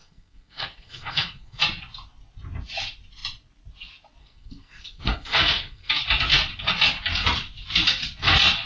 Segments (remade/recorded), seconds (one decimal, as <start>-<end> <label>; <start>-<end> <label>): 0.0-1.6 remade; 1.6-4.2 recorded; 4.2-5.9 remade; 5.9-8.7 recorded